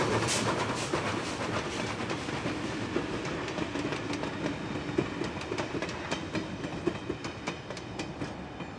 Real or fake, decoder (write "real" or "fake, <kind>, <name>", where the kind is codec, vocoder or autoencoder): real